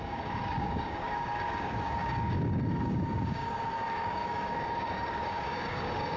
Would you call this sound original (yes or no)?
no